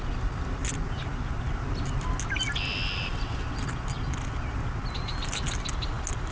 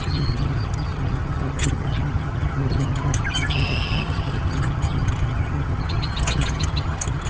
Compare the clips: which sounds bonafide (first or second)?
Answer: first